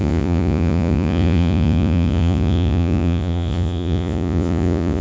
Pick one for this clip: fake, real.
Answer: fake